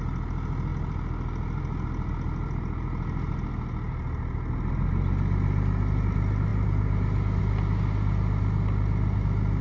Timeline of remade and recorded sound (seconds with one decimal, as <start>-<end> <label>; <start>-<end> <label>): 0.0-9.6 recorded